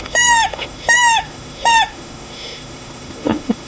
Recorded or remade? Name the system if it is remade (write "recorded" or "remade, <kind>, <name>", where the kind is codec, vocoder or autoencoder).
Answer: remade, autoencoder, DAC-VAE